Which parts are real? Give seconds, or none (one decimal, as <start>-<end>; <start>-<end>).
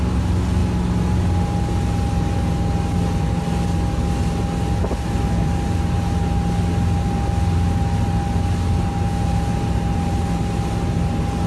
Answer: 0.0-11.5